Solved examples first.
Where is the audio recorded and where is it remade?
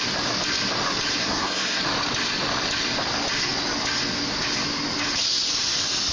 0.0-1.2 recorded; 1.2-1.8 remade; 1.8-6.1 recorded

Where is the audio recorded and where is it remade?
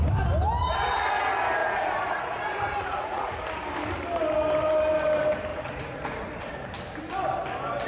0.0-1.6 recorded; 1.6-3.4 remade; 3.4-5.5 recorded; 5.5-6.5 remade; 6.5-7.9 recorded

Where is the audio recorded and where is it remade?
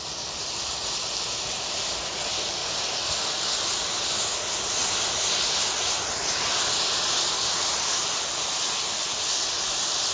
0.0-10.1 recorded